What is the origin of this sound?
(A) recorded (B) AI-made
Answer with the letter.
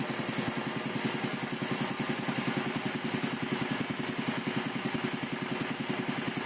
A